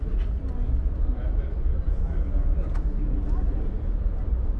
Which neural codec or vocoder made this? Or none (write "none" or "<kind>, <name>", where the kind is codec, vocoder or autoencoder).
none